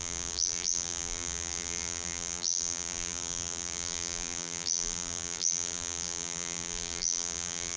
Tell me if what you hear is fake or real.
fake